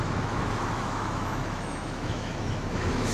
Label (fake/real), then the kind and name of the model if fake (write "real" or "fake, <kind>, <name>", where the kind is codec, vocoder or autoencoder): fake, autoencoder, DAC-VAE